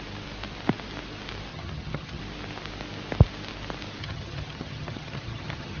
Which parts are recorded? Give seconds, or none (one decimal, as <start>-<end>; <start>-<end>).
0.0-1.5; 2.2-4.0